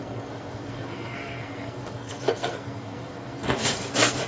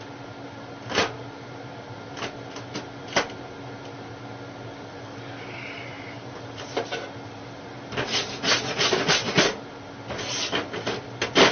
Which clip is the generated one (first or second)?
first